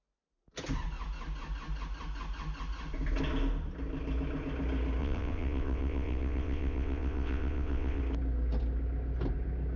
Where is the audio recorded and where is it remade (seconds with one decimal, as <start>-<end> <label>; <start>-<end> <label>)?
0.0-5.0 recorded; 5.0-8.0 remade; 8.0-9.8 recorded